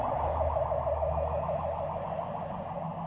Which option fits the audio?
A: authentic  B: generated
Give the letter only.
A